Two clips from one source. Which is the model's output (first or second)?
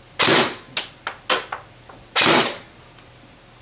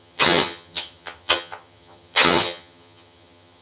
second